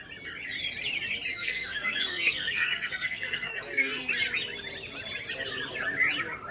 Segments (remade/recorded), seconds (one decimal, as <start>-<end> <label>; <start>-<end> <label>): 0.0-1.3 recorded; 1.3-4.1 remade; 4.1-6.5 recorded